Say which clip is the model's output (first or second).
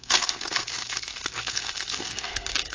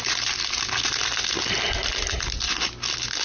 first